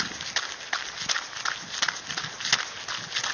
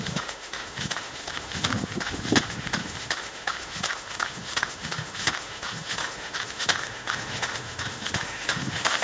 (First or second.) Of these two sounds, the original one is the first